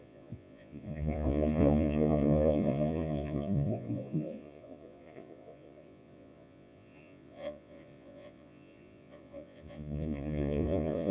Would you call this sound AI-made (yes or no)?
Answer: yes